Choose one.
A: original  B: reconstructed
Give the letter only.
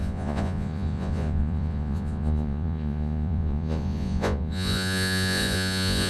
B